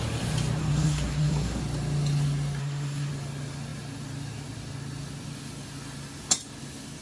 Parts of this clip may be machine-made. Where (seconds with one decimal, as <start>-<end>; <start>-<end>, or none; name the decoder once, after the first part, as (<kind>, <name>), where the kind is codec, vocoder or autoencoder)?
0.6-1.6 (codec, SNAC); 2.6-3.1